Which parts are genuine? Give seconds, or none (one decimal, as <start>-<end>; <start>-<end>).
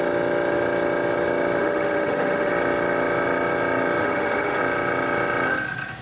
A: 0.0-1.6; 2.5-4.0; 4.6-6.0